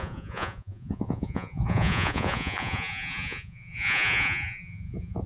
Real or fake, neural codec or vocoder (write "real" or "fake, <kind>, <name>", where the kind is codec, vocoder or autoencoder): fake, vocoder, Vocos